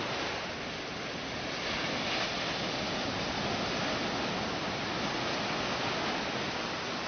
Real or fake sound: real